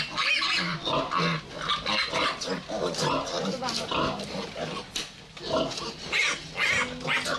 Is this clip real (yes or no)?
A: yes